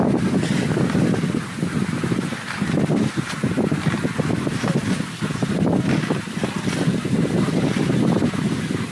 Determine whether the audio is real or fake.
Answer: real